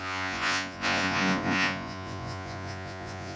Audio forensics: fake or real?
fake